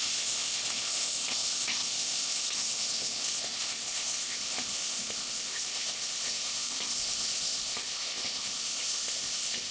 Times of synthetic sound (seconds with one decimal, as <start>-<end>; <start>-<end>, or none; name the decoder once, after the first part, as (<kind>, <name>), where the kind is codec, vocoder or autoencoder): 0.0-9.7 (codec, ZipCodec)